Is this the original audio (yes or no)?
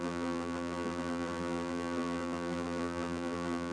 no